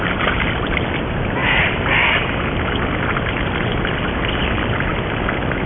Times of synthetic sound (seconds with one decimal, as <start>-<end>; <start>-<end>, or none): none